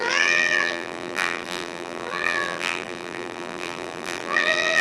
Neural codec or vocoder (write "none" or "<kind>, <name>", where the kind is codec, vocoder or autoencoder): vocoder, BigVGAN v2